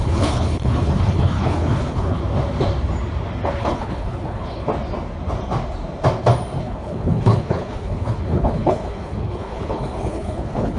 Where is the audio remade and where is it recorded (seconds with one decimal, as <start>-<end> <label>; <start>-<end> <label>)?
0.0-2.2 remade; 2.2-3.6 recorded; 3.6-4.7 remade; 4.7-6.6 recorded; 6.6-10.8 remade